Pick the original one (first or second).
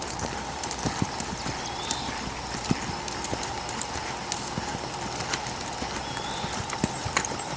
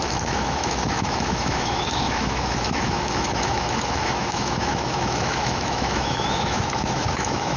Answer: first